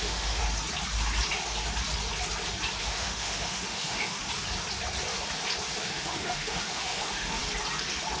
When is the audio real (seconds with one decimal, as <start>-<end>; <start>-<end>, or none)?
0.4-2.8; 4.2-5.8; 7.4-8.2